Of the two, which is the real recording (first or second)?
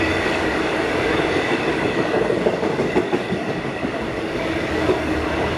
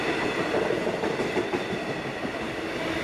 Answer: second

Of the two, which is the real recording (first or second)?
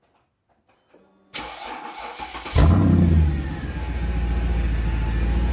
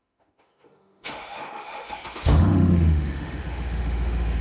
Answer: first